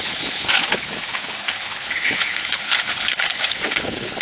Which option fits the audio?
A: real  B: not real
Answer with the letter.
B